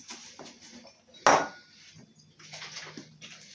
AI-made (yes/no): no